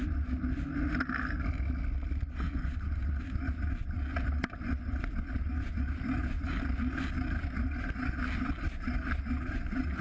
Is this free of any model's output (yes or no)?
yes